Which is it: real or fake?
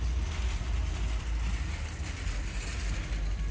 real